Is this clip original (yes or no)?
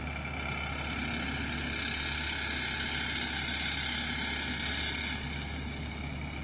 yes